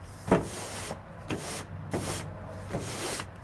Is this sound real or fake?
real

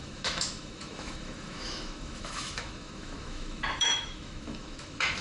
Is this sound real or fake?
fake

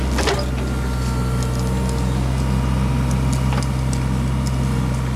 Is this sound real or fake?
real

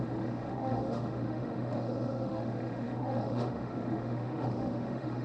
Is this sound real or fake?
fake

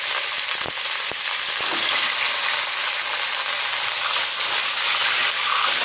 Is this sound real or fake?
real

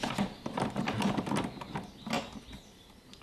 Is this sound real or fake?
real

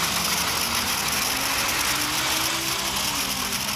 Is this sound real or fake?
real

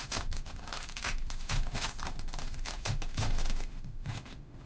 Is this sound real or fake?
fake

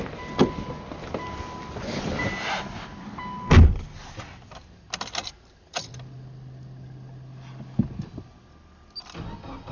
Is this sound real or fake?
real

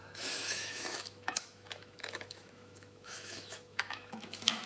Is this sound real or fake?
fake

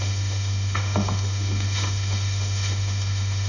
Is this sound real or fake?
fake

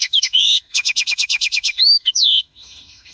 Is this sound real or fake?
fake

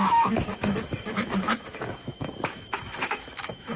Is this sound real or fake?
fake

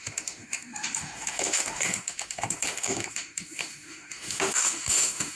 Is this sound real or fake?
fake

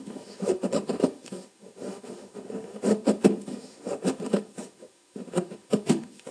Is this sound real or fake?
fake